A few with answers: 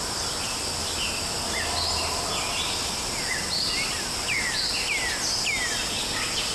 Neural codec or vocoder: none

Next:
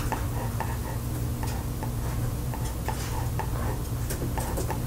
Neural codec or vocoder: none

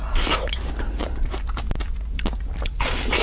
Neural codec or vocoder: none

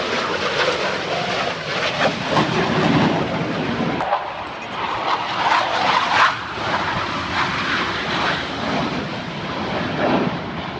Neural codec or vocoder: none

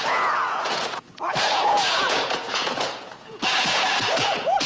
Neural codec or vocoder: vocoder, Vocos